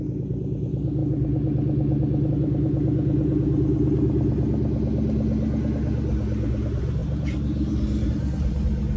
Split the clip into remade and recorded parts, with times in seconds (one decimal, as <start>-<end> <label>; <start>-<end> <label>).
0.0-9.0 recorded